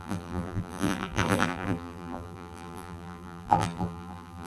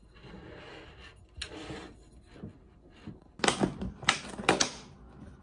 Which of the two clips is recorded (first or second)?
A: second